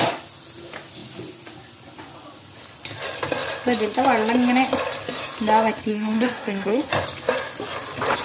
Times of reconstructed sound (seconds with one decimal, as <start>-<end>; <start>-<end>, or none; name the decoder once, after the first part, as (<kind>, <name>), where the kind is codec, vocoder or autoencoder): 5.9-6.9 (codec, SNAC)